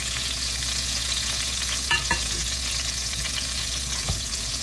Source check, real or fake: fake